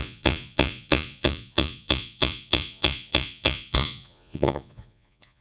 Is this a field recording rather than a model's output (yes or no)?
no